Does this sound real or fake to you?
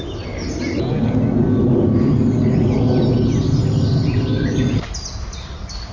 real